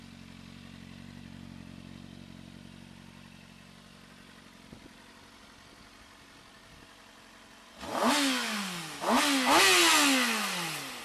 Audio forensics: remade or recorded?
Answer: recorded